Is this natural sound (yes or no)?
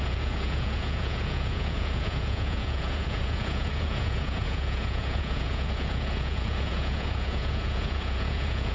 no